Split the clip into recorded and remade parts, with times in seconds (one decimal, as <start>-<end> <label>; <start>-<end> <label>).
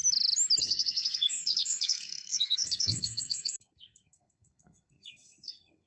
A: 0.0-0.6 recorded; 0.6-5.9 remade